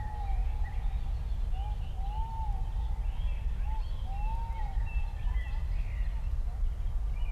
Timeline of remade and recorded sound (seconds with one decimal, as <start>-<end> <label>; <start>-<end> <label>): 0.0-7.3 recorded